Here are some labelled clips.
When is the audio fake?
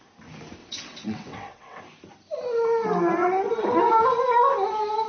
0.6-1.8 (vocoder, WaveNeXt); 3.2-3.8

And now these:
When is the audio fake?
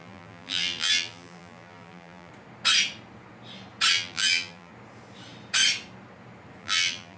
0.0-2.3 (vocoder, BigVGAN v2); 3.9-4.7; 6.6-7.2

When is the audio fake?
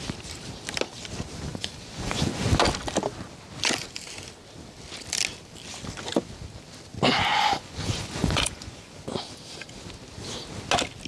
1.5-2.5 (vocoder, Vocos); 7.3-9.2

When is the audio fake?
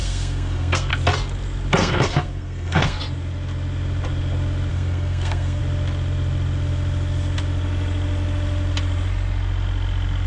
0.0-0.9 (codec, SNAC); 1.8-3.0; 4.7-5.6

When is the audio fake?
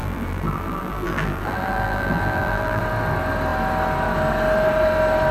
0.0-2.8 (vocoder, BigVGAN v2)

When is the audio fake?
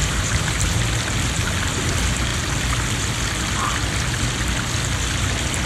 0.0-0.8 (vocoder, BigVGAN v2)